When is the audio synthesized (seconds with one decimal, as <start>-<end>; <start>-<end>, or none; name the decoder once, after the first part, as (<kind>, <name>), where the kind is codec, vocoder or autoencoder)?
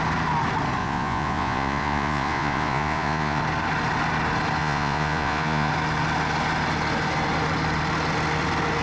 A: 0.8-3.4 (vocoder, Vocos); 4.6-5.7